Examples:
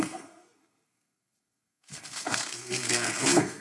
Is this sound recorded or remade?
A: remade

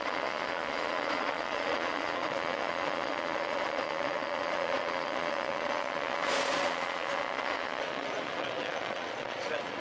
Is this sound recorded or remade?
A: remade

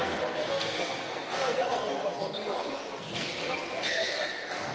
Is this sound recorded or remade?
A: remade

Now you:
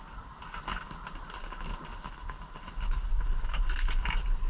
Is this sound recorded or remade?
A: recorded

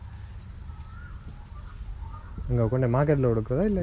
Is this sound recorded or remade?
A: recorded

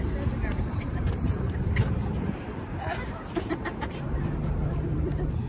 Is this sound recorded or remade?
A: remade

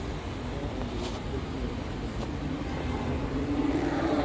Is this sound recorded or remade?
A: recorded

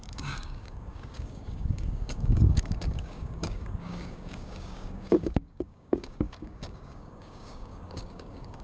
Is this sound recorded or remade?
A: remade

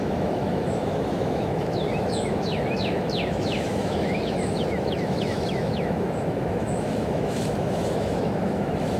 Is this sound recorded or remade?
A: remade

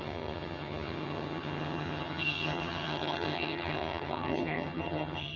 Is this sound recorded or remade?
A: remade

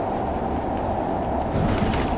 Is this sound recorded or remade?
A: recorded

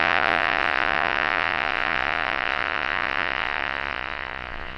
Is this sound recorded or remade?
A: remade